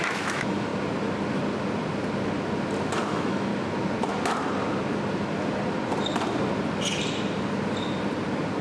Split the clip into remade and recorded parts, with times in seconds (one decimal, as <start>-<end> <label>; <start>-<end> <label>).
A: 0.0-0.7 remade; 0.7-2.9 recorded; 2.9-3.5 remade; 3.5-8.6 recorded